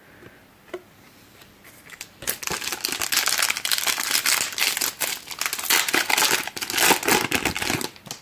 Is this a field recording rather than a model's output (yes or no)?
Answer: yes